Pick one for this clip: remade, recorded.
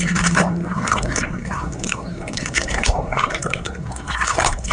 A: remade